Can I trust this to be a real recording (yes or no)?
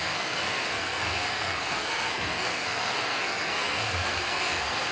no